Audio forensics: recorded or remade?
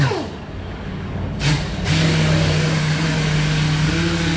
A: remade